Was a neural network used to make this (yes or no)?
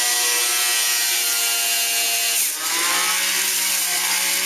no